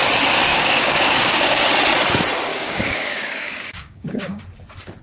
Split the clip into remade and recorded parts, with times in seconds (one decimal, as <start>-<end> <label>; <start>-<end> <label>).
0.0-0.5 recorded; 0.5-1.6 remade; 1.6-2.5 recorded; 2.5-4.4 remade; 4.4-5.0 recorded